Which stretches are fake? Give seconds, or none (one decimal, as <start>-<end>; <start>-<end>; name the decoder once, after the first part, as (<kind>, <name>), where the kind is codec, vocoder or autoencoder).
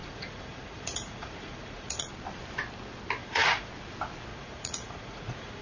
0.0-2.1 (vocoder, Vocos); 3.2-3.7; 4.3-5.6